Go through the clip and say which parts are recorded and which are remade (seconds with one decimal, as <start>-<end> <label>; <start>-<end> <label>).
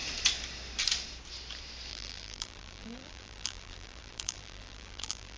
0.0-1.9 recorded; 1.9-5.4 remade